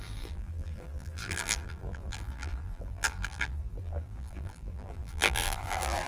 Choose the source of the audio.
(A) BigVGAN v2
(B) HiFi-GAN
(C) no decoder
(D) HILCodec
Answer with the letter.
A